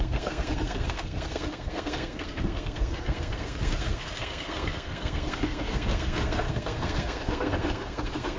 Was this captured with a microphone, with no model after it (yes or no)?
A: no